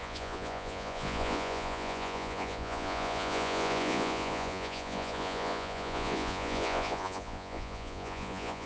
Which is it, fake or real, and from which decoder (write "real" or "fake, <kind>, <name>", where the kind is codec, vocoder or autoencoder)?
fake, vocoder, Vocos